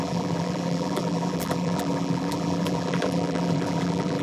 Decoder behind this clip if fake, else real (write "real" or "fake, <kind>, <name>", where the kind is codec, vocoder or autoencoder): fake, vocoder, BigVGAN v2